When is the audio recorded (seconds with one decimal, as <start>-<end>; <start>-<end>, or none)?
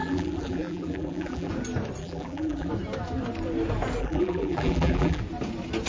1.5-2.0; 2.7-4.0; 5.2-5.9